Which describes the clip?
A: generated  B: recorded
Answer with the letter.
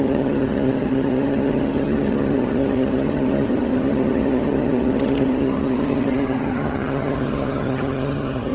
A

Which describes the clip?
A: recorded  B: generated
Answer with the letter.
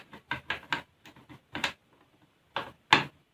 A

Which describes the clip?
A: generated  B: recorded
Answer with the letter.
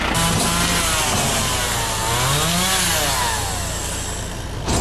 B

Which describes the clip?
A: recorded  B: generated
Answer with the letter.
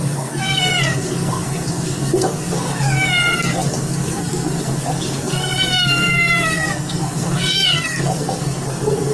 B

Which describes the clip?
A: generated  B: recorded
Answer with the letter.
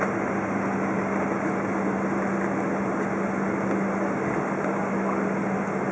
B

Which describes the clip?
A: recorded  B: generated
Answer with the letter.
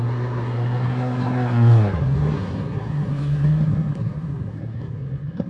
B